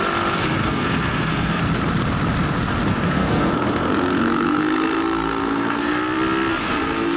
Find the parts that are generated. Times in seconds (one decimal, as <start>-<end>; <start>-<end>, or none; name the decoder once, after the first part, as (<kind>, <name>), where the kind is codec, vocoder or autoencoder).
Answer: 0.6-1.6 (codec, SNAC); 2.9-5.9; 6.5-7.2